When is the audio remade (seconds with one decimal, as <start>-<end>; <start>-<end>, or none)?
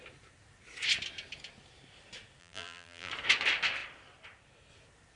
2.4-3.1